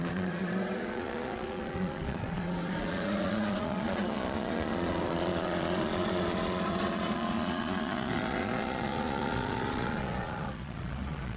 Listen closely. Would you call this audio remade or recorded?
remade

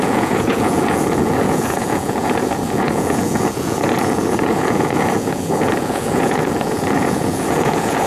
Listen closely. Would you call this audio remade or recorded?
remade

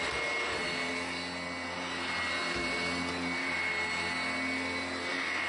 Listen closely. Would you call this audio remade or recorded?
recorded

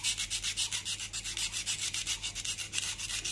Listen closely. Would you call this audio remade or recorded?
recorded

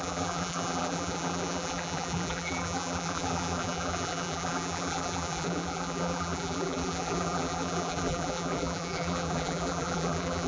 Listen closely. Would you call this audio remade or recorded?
remade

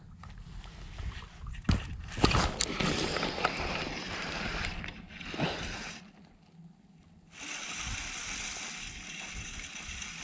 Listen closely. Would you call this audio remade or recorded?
recorded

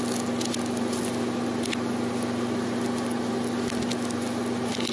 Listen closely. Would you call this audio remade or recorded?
recorded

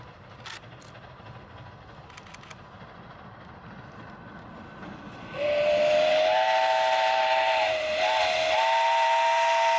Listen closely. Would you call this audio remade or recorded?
recorded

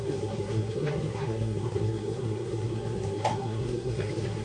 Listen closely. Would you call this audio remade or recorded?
remade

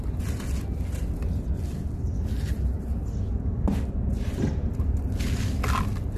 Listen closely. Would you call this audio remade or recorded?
recorded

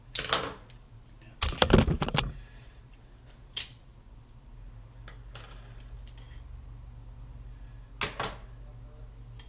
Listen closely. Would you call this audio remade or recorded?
recorded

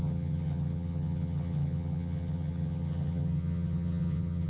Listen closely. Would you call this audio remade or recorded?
remade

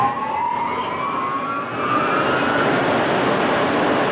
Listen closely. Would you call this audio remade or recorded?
recorded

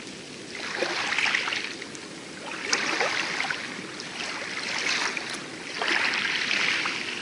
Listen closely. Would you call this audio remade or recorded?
recorded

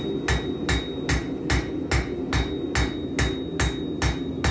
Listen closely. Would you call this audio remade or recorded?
recorded